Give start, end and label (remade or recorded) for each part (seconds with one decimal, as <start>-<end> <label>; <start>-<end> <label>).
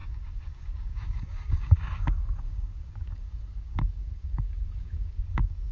0.0-5.7 remade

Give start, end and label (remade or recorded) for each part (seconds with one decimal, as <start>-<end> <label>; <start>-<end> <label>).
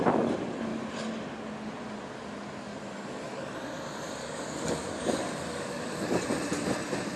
0.0-4.2 recorded; 4.2-6.2 remade; 6.2-7.2 recorded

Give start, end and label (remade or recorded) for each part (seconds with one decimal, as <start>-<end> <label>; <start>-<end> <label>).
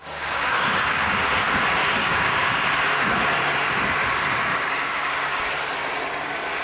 0.0-1.2 remade; 1.2-2.0 recorded; 2.0-2.6 remade; 2.6-4.5 recorded; 4.5-5.4 remade; 5.4-6.6 recorded